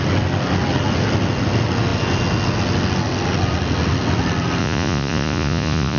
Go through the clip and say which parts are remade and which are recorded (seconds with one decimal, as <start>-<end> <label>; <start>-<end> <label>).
0.0-4.6 recorded; 4.6-6.0 remade